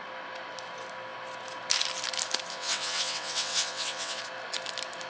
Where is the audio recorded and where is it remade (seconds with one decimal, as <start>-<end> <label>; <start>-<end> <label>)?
0.0-2.5 recorded; 2.5-4.2 remade; 4.2-5.1 recorded